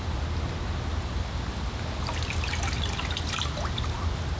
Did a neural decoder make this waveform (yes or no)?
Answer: no